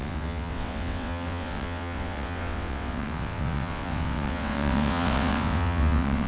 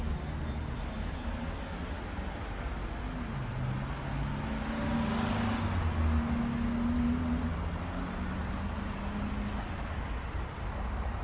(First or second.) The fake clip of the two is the first